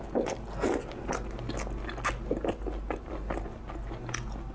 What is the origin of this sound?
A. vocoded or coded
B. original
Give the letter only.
B